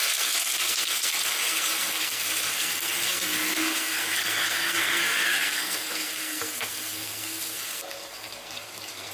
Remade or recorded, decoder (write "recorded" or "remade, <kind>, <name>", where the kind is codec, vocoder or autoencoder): remade, codec, SNAC